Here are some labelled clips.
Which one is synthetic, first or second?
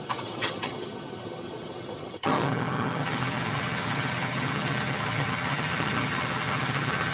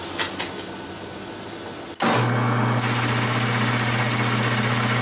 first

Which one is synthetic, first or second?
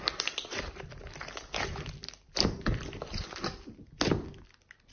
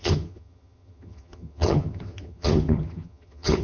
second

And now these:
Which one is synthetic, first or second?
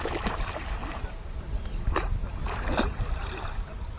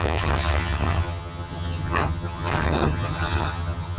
second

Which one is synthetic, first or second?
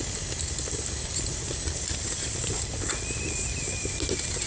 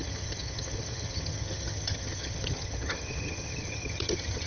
second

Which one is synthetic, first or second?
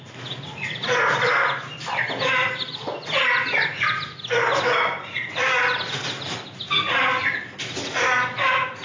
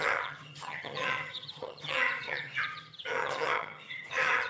second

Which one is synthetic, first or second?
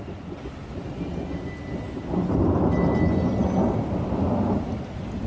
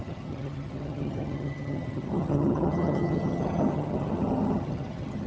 second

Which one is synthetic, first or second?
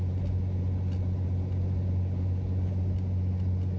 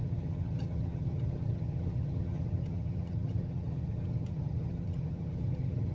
second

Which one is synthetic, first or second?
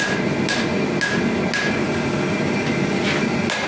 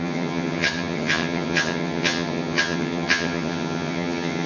second